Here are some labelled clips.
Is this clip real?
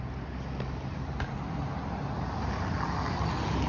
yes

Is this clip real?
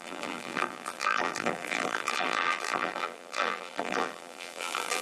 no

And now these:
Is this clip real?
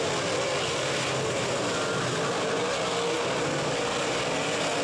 yes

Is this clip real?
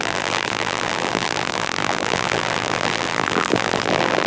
no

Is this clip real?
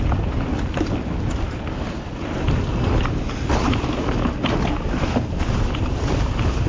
yes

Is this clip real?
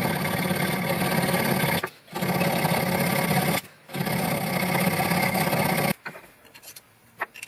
yes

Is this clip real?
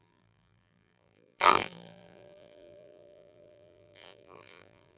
no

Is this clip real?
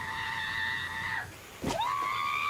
no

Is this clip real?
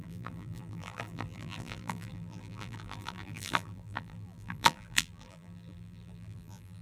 no